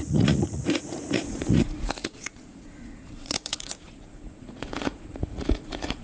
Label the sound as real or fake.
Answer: fake